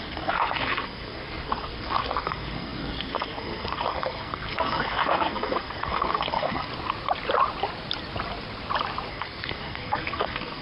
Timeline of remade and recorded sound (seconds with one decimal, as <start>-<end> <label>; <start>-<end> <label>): 0.0-6.7 remade; 6.7-9.1 recorded; 9.1-10.6 remade